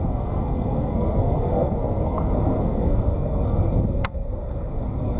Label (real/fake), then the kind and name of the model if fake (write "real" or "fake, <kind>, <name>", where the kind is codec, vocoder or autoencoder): fake, codec, SNAC